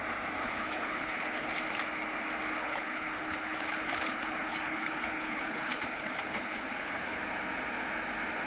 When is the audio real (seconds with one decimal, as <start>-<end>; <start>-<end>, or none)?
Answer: 0.0-0.4; 1.5-2.6; 7.2-8.5